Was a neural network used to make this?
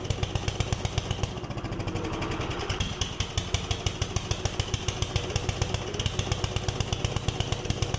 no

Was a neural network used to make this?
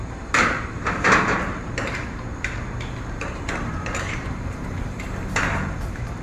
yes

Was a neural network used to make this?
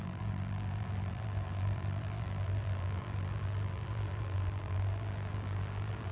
yes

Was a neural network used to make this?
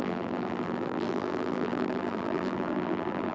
yes